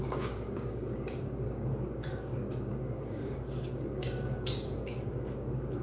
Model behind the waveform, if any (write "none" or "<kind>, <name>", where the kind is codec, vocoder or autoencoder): codec, DAC